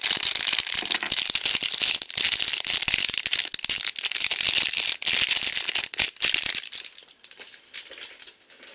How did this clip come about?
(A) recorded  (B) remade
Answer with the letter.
A